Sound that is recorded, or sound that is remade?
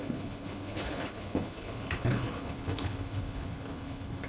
remade